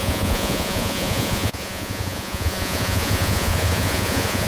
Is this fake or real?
fake